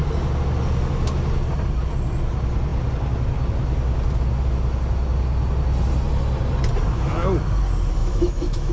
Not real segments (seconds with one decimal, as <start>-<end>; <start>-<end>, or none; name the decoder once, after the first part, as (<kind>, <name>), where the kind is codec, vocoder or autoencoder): 8.0-8.7 (autoencoder, DAC-VAE)